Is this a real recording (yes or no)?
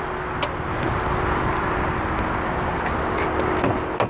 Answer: yes